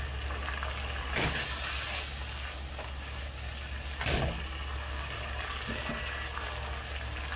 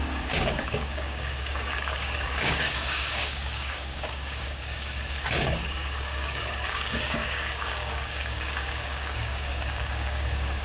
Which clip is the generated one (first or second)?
second